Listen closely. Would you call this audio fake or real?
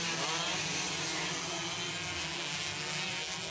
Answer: real